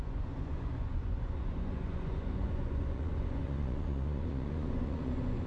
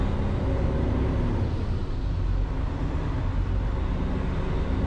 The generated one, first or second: first